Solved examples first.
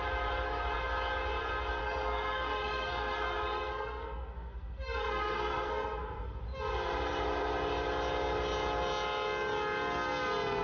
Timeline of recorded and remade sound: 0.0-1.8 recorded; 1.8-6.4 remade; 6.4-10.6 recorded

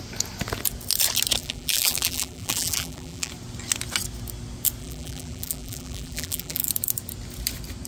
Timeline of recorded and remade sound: 0.0-1.4 recorded; 1.4-3.3 remade; 3.3-4.8 recorded; 4.8-6.7 remade; 6.7-7.9 recorded

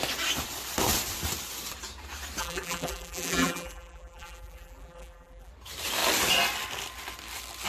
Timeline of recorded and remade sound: 0.0-2.4 recorded; 2.4-5.5 remade; 5.5-7.7 recorded

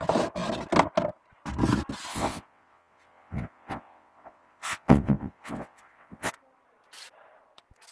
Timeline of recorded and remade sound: 0.0-2.1 recorded; 2.1-6.3 remade; 6.3-7.9 recorded

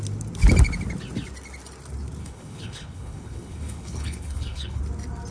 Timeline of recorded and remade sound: 0.0-2.2 recorded; 2.2-4.8 remade; 4.8-5.3 recorded

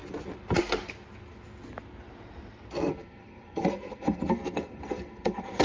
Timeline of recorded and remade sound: 0.0-2.9 recorded; 2.9-5.6 remade